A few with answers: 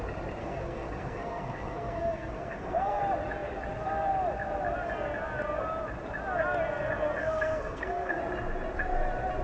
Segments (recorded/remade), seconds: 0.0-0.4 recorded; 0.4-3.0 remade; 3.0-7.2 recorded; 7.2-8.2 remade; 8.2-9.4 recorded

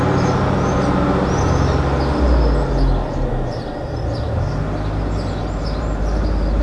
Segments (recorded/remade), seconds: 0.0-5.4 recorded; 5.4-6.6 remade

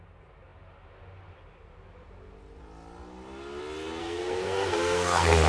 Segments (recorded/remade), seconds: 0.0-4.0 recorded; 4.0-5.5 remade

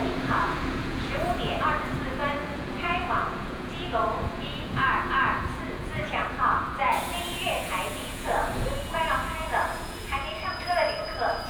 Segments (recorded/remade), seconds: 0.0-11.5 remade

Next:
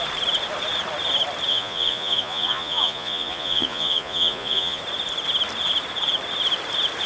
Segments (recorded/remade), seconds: 0.0-1.5 recorded; 1.5-4.8 remade; 4.8-7.1 recorded